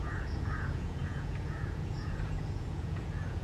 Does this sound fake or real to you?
fake